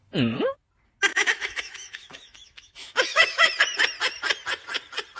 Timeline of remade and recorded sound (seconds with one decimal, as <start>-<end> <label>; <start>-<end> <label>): 0.0-1.1 recorded; 1.1-3.5 remade; 3.5-5.2 recorded